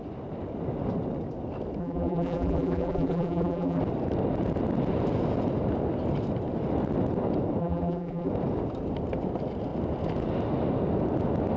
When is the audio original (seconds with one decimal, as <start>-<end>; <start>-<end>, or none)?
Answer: 0.0-1.8; 3.8-7.6; 8.3-11.6